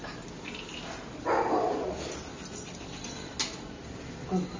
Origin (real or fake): real